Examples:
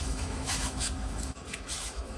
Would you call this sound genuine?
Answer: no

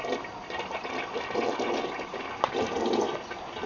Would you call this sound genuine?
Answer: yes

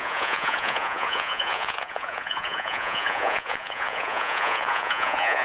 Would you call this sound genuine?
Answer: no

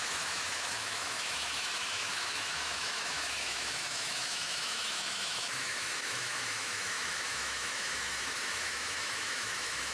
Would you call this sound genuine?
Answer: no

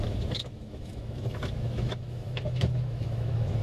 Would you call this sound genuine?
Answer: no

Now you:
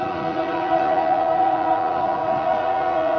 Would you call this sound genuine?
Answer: no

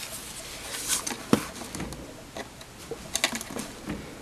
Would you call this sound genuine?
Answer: yes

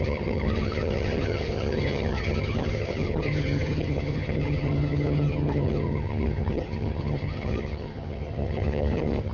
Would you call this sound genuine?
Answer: no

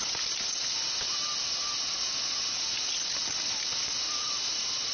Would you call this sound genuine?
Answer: yes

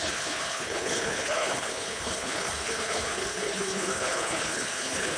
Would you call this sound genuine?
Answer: no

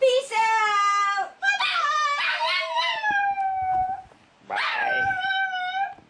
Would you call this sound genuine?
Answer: yes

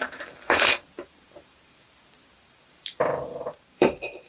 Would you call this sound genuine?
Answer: no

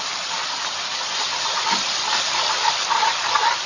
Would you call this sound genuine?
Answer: yes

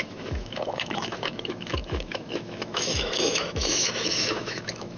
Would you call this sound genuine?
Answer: no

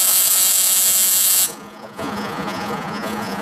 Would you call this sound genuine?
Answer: no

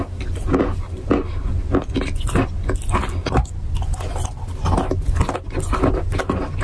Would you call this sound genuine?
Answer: yes